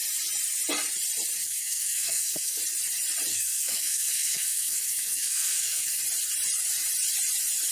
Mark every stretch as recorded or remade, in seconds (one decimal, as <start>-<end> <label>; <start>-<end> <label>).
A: 0.0-1.4 recorded; 1.4-2.6 remade; 2.6-3.3 recorded; 3.3-6.0 remade; 6.0-7.7 recorded